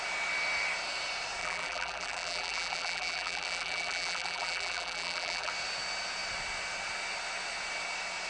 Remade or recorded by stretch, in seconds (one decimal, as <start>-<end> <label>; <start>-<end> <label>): 0.0-1.4 recorded; 1.4-5.5 remade; 5.5-8.3 recorded